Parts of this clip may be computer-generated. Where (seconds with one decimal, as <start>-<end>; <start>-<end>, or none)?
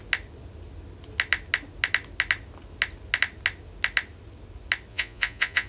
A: 4.9-5.7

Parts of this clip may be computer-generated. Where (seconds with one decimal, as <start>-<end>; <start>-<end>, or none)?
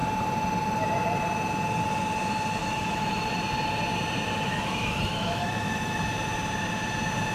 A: 2.6-3.3; 4.5-6.0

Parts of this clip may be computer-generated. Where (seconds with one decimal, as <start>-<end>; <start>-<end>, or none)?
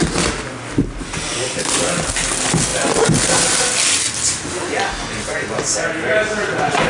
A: none